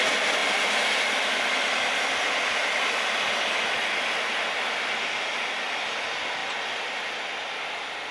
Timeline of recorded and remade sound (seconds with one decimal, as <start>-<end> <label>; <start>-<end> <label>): 0.0-8.1 recorded